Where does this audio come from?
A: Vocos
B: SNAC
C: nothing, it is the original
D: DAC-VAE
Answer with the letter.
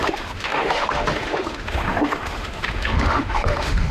D